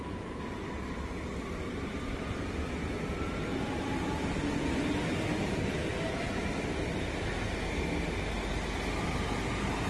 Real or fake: real